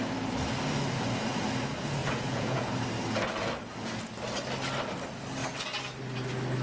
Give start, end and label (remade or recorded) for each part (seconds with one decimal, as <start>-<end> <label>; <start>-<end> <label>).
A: 0.0-2.0 recorded; 2.0-2.7 remade; 2.7-6.6 recorded